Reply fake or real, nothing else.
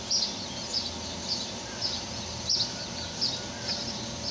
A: real